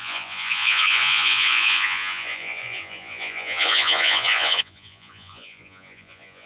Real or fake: fake